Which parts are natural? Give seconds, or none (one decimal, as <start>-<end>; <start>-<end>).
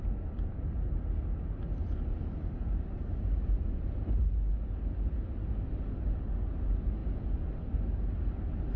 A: 0.0-8.8